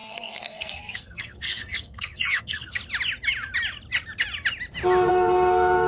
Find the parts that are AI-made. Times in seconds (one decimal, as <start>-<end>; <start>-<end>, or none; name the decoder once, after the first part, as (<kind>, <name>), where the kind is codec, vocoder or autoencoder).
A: 0.0-2.8 (codec, SNAC); 5.1-5.9